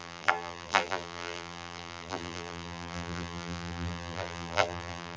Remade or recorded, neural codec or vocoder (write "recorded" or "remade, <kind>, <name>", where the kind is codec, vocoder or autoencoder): remade, vocoder, BigVGAN v2